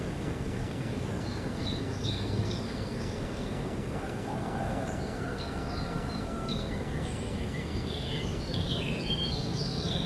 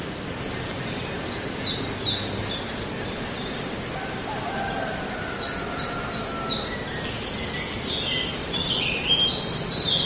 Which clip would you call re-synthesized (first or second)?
first